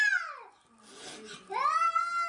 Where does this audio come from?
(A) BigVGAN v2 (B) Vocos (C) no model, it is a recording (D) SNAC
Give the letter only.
C